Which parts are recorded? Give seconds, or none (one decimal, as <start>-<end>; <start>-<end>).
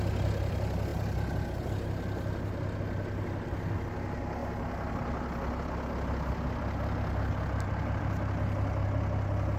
0.0-9.6